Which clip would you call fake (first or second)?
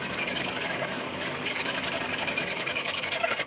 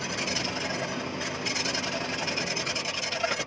first